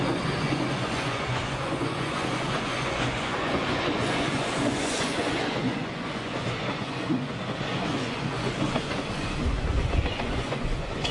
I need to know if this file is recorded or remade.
remade